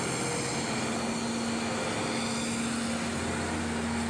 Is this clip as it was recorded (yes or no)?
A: yes